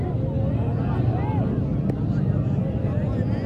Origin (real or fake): real